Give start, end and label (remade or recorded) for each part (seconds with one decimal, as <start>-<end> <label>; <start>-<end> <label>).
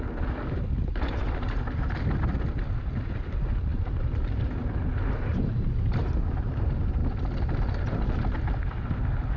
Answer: 0.0-5.3 recorded; 5.3-6.5 remade; 6.5-9.4 recorded